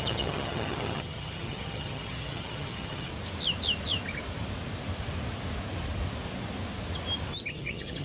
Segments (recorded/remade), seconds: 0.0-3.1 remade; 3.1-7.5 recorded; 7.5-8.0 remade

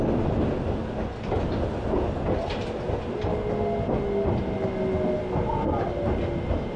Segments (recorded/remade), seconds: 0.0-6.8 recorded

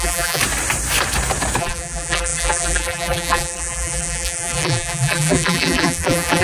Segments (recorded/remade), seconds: 0.0-0.4 remade; 0.4-1.6 recorded; 1.6-6.4 remade

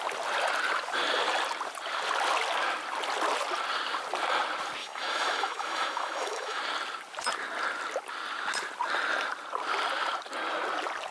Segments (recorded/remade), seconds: 0.0-4.8 recorded; 4.8-6.6 remade; 6.6-11.1 recorded

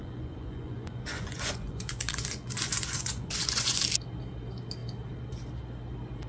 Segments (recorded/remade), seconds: 0.0-3.8 remade; 3.8-6.3 recorded